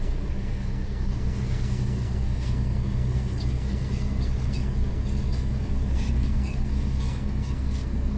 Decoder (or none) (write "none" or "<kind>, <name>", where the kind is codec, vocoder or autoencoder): codec, SNAC